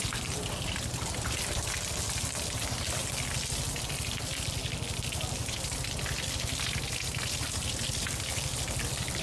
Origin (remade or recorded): recorded